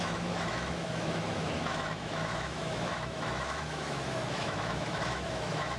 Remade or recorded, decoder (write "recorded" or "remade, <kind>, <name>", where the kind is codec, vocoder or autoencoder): remade, autoencoder, DAC-VAE